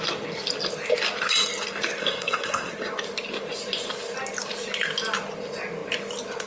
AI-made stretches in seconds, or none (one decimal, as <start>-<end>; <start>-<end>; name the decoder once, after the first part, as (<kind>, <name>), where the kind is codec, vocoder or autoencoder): 2.0-2.7 (codec, SNAC)